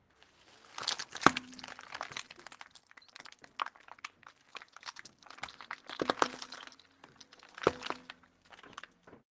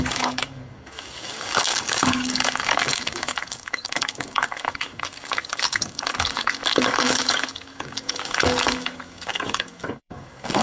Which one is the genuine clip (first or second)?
first